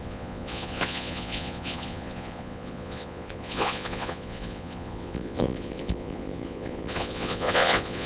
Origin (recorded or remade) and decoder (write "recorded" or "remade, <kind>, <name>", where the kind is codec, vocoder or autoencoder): remade, vocoder, Vocos